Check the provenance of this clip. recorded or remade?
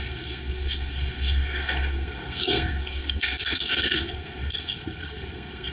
remade